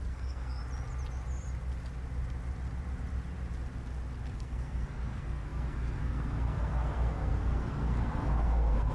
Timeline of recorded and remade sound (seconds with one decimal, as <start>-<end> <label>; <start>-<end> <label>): 0.0-0.6 remade; 0.6-4.3 recorded; 4.3-8.9 remade